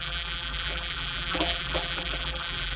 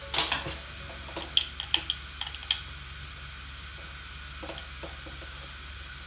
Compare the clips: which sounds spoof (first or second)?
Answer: first